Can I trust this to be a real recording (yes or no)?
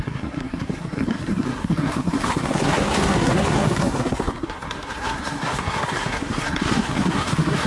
no